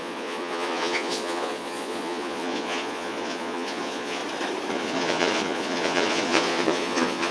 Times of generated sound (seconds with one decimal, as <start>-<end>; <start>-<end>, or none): 0.0-4.2; 4.7-7.3